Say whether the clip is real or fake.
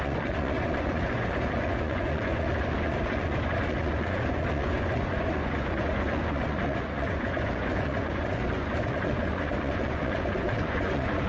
fake